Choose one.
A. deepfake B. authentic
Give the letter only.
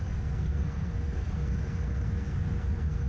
A